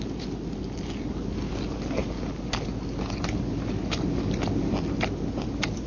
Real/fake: real